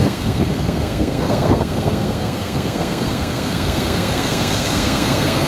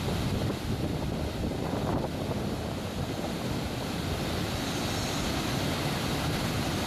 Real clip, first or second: second